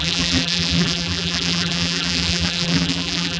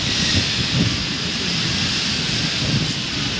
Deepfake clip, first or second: first